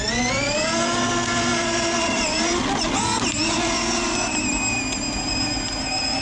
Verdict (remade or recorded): recorded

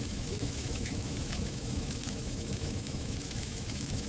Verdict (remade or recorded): remade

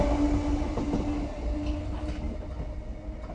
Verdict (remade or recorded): recorded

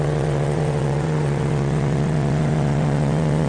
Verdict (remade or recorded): remade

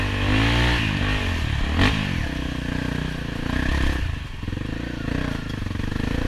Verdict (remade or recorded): recorded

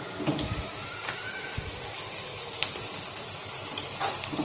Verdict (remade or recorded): recorded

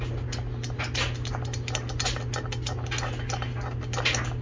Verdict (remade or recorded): recorded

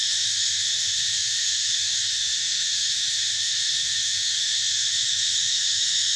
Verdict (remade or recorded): remade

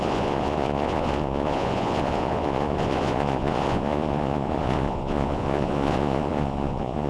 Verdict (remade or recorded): remade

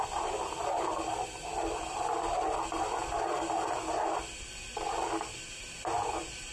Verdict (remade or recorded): recorded